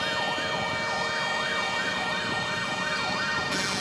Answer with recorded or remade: recorded